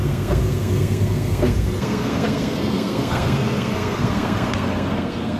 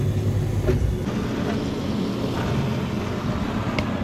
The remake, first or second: first